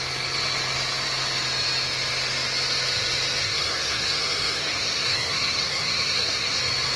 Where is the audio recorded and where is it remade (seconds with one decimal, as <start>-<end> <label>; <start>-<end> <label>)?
0.0-3.4 recorded; 3.4-6.6 remade; 6.6-7.0 recorded